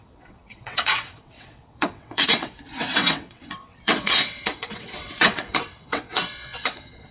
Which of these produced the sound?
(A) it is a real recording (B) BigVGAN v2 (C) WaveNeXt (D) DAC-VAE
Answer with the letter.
C